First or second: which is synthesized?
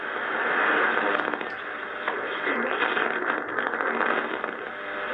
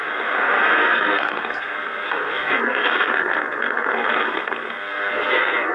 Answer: second